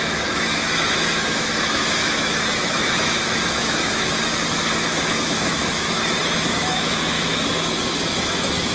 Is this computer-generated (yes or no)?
yes